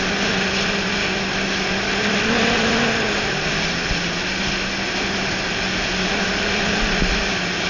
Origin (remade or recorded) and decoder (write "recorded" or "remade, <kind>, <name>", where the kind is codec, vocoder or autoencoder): recorded